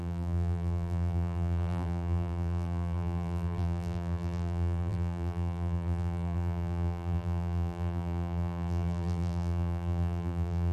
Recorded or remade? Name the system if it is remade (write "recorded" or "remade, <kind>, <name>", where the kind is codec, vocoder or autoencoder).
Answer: remade, vocoder, BigVGAN v2